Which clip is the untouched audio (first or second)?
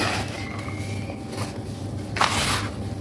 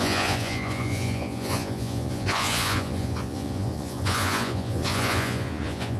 first